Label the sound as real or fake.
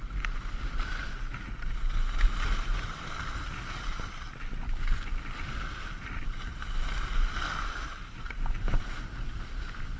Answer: real